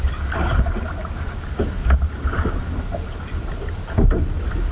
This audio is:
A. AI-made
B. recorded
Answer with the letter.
B